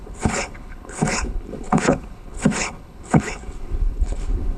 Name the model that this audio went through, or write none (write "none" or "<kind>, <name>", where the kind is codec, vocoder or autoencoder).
codec, HILCodec